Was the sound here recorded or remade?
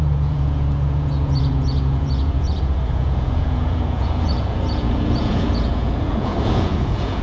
remade